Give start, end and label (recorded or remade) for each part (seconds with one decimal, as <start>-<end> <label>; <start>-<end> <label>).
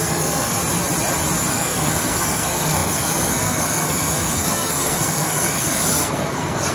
0.0-0.6 remade; 0.6-1.5 recorded; 1.5-6.7 remade